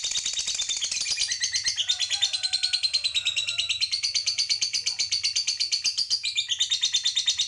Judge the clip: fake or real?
real